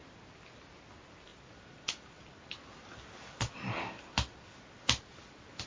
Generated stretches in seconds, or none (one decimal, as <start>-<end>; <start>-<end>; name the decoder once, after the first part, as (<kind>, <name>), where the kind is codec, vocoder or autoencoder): none